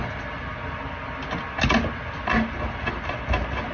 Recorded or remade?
recorded